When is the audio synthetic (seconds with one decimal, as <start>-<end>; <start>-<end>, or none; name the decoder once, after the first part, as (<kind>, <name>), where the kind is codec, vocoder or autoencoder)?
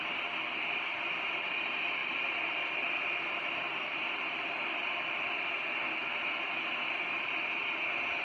2.0-5.3 (vocoder, BigVGAN v2)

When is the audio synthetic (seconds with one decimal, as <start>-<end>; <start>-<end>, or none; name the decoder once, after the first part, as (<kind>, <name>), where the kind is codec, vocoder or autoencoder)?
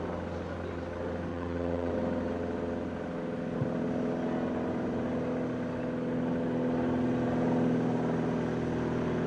1.3-1.9 (vocoder, Vocos)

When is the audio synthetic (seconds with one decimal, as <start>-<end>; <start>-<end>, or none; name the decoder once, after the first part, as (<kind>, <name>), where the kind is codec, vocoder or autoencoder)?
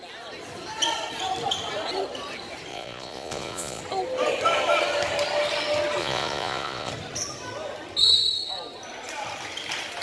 2.7-3.8 (vocoder, Vocos); 6.0-6.9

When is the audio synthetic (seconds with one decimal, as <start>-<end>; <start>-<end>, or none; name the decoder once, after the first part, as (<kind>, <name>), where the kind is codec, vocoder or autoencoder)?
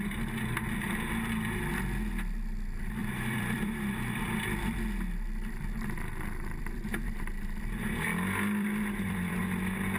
3.0-4.8 (vocoder, BigVGAN v2); 6.6-9.4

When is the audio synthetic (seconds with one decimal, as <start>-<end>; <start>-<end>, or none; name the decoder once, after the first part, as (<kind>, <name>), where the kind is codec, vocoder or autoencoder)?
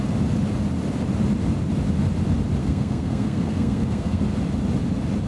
2.6-4.2 (codec, SNAC)